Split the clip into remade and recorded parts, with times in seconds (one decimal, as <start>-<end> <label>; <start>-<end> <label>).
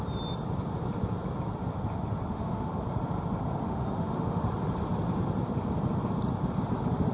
0.0-2.3 recorded; 2.3-2.8 remade; 2.8-3.7 recorded; 3.7-4.4 remade; 4.4-7.1 recorded